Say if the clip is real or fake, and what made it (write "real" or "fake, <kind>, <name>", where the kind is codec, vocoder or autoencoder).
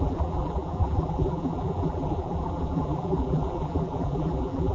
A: fake, vocoder, BigVGAN v2